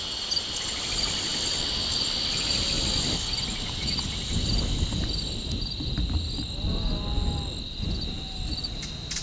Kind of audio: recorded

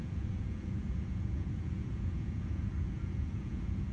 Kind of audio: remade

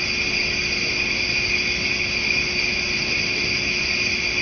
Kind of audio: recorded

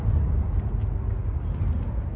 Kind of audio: recorded